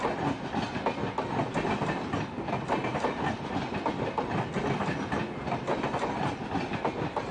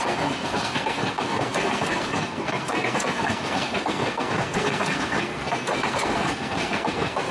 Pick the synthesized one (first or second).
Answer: second